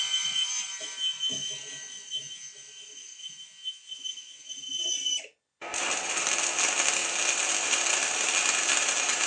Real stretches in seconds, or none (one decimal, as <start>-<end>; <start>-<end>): 0.0-9.3

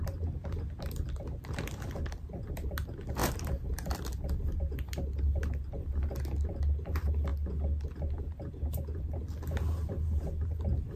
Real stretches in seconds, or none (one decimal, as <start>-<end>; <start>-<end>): 0.0-3.2; 4.6-11.0